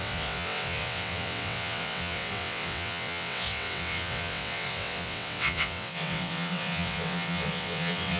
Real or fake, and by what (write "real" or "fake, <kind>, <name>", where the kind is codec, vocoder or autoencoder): fake, vocoder, WaveNeXt